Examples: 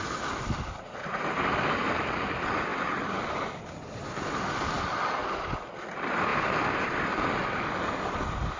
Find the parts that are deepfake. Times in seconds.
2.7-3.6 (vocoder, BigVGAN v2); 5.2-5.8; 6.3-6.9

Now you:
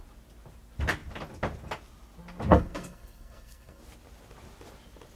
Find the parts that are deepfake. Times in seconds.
2.5-3.8 (codec, SNAC)

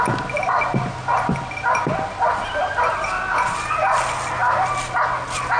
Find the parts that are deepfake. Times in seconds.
none

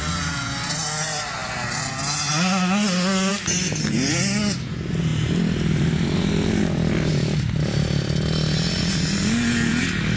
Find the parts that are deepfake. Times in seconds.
none